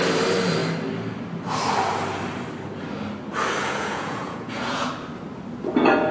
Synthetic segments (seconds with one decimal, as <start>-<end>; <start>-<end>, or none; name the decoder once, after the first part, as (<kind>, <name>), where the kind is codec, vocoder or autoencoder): 3.6-4.9 (vocoder, Vocos)